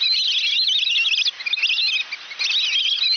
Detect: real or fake real